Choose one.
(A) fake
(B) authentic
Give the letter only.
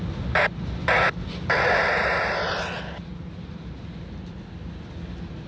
B